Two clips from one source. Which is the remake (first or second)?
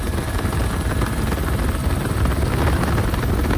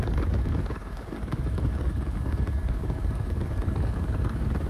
second